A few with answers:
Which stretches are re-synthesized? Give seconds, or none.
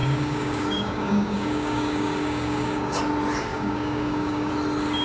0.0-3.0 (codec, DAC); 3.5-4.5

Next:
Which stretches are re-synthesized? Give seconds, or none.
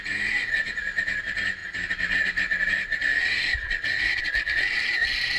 none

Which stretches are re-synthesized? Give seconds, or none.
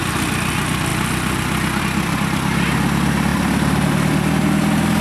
none